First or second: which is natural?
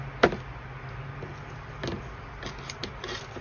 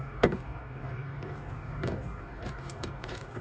first